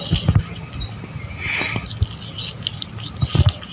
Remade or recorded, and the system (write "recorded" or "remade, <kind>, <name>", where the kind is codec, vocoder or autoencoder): recorded